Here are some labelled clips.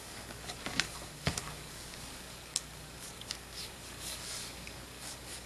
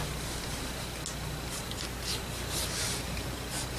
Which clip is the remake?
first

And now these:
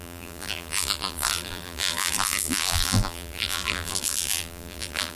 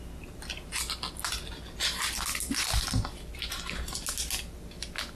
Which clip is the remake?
first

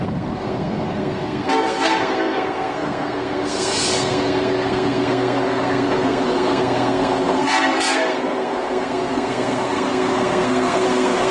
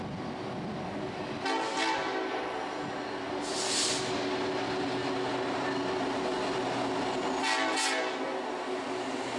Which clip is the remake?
first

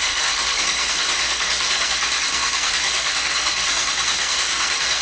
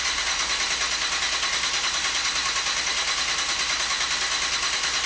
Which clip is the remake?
first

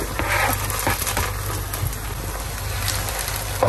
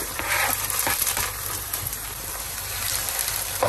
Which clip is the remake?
second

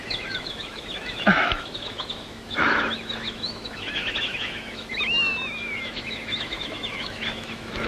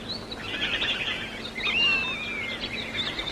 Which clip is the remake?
first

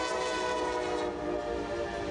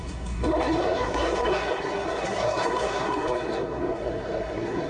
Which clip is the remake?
second